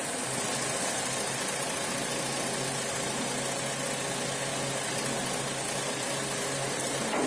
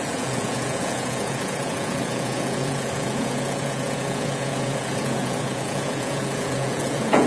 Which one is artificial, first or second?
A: second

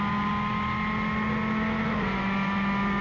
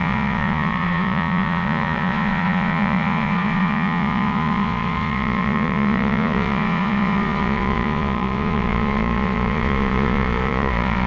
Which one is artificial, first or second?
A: second